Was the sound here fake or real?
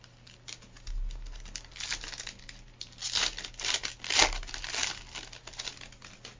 real